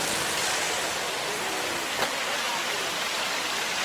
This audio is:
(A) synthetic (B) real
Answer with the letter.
B